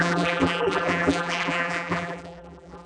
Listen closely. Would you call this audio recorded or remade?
remade